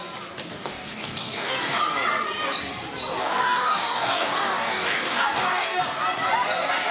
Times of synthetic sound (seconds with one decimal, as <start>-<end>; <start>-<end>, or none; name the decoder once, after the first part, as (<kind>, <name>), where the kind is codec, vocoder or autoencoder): 0.5-1.8 (codec, DAC); 3.2-5.8